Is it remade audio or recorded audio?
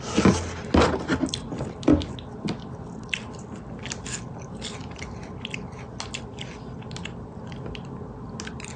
recorded